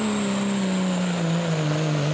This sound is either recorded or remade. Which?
recorded